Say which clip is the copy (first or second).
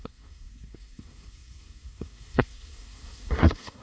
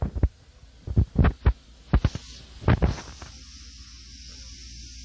first